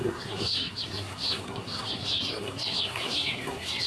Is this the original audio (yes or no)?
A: no